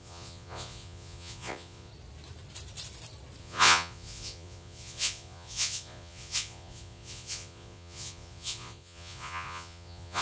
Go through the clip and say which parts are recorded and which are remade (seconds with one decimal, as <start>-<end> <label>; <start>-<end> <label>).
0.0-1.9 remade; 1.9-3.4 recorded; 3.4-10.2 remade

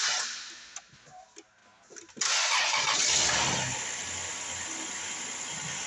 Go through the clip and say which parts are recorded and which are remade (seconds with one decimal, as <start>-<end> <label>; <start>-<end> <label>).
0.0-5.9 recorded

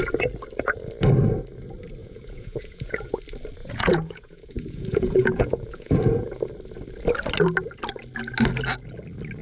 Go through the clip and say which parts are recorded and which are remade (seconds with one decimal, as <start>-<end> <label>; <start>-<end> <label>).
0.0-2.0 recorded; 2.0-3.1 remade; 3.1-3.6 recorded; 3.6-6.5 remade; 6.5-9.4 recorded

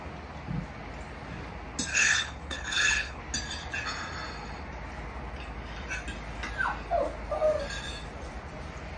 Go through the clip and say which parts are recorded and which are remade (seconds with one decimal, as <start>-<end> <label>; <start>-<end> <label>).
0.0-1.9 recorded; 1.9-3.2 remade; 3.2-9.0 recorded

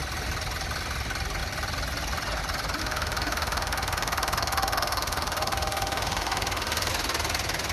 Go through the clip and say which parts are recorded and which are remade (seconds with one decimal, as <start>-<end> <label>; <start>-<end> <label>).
0.0-2.8 recorded; 2.8-6.9 remade; 6.9-7.7 recorded

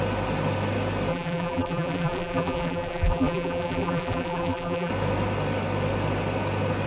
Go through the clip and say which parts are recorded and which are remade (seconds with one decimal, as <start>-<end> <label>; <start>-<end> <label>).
0.0-1.1 recorded; 1.1-4.9 remade; 4.9-6.9 recorded